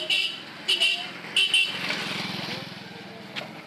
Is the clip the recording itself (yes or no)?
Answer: yes